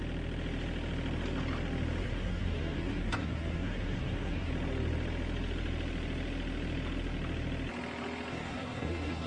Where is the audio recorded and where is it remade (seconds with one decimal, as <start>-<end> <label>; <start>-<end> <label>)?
0.0-2.0 recorded; 2.0-4.5 remade; 4.5-8.3 recorded; 8.3-9.3 remade